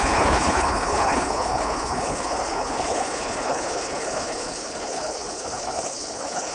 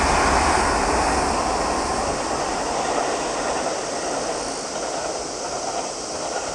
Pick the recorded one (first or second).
second